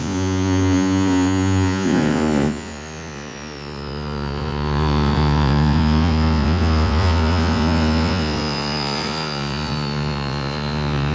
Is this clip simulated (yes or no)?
yes